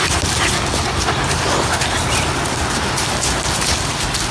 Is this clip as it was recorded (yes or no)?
yes